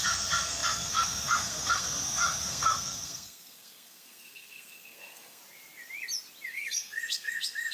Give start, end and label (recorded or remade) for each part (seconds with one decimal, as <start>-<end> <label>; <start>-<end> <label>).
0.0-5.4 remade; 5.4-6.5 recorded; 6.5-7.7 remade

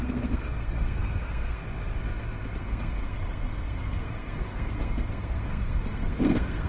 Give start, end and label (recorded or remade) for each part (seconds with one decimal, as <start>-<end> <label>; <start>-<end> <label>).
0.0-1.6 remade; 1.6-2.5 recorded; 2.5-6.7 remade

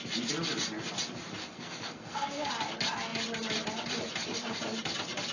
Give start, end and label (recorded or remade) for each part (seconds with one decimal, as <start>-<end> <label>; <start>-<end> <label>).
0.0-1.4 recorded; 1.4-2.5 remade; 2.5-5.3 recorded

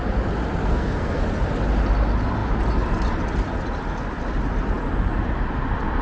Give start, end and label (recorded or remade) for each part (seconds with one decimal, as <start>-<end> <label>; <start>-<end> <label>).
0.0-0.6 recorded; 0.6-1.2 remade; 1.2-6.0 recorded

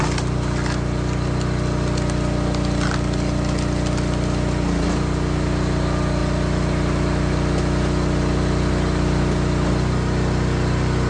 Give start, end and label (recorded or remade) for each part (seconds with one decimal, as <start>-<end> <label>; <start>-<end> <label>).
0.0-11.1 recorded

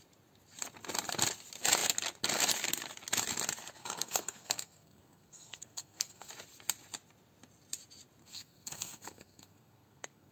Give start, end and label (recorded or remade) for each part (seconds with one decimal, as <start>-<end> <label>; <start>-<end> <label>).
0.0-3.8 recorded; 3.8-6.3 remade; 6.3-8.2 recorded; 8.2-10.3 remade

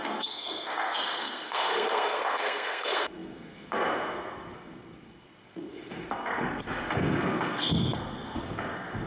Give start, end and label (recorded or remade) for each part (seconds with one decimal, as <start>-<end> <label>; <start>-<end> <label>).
0.0-9.1 remade